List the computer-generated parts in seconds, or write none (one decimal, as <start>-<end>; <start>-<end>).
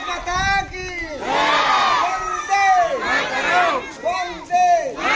none